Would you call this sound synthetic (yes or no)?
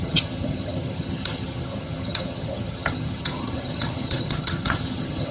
yes